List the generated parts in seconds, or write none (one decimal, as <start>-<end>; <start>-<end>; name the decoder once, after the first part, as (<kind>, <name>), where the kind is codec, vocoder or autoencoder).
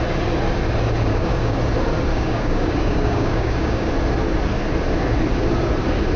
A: 1.1-1.6 (codec, DAC); 2.1-3.9